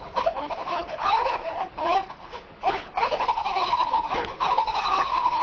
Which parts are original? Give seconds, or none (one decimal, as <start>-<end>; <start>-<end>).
none